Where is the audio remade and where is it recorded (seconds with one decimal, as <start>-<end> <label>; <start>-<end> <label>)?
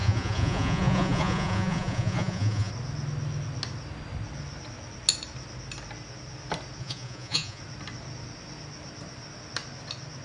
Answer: 0.0-2.7 remade; 2.7-6.8 recorded; 6.8-7.6 remade; 7.6-10.2 recorded